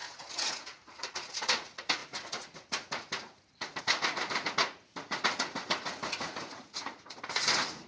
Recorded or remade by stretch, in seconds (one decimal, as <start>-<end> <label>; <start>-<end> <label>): 0.0-7.9 remade